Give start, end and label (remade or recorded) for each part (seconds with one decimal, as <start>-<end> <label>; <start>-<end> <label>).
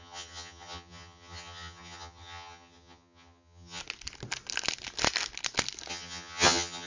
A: 0.0-3.8 remade; 3.8-5.9 recorded; 5.9-6.9 remade